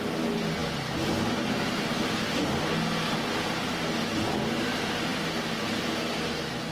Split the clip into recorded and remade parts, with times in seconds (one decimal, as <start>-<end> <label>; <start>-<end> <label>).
0.0-6.7 recorded